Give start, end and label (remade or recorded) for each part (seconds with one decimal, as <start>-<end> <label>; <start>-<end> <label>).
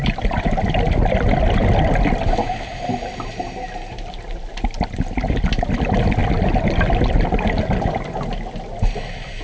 0.0-9.4 recorded